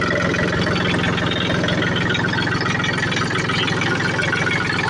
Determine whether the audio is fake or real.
real